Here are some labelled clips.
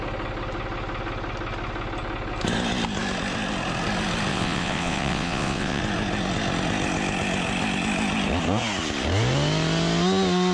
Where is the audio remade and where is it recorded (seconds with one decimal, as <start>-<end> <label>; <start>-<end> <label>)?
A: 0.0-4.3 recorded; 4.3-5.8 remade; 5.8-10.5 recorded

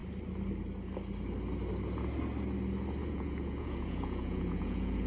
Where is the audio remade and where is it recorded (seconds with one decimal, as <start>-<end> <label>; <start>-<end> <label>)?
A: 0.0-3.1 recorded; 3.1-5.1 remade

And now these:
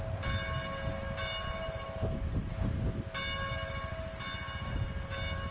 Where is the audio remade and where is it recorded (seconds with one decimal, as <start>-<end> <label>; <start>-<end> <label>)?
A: 0.0-5.5 recorded

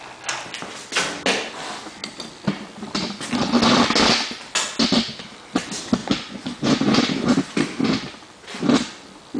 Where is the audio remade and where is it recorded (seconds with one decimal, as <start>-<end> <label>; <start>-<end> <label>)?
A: 0.0-6.0 recorded; 6.0-7.0 remade; 7.0-9.4 recorded

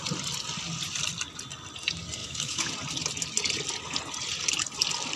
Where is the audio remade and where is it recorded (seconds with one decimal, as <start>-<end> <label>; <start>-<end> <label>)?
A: 0.0-2.2 recorded; 2.2-2.7 remade; 2.7-5.2 recorded